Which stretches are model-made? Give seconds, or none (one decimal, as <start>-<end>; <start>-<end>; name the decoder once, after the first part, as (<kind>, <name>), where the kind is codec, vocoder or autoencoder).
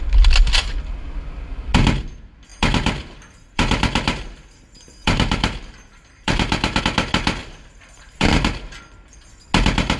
2.5-6.8 (vocoder, BigVGAN v2); 7.4-8.8